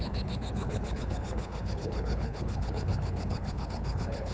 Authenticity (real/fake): fake